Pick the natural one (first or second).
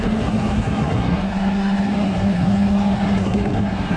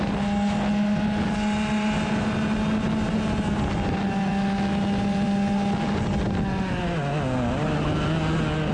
second